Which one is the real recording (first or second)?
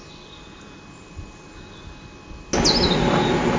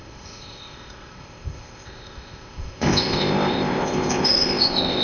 first